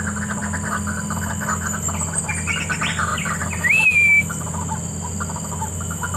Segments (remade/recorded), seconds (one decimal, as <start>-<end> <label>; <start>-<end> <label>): 0.0-6.2 recorded